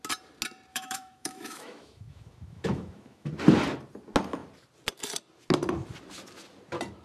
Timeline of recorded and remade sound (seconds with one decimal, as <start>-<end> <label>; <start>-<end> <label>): 0.0-0.7 recorded; 0.7-3.3 remade; 3.3-7.0 recorded